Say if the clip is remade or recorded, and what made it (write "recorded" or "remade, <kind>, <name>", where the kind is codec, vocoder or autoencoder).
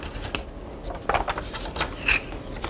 recorded